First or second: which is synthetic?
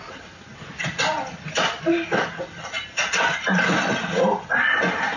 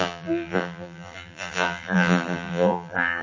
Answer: second